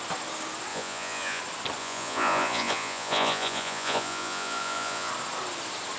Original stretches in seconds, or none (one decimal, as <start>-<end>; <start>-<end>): 0.0-0.7; 1.4-1.8; 5.1-6.0